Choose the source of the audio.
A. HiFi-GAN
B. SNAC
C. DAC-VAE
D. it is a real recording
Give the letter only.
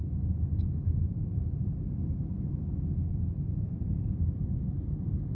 D